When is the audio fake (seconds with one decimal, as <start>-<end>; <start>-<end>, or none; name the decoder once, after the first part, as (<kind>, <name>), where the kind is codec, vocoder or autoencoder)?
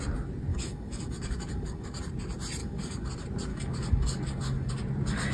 0.5-2.0 (codec, DAC); 2.6-3.1; 3.5-4.7